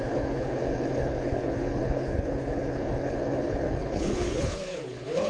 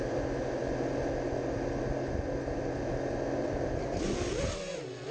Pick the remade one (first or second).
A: first